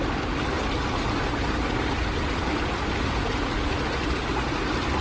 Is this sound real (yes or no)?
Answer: yes